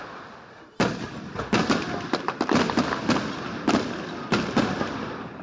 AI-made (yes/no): no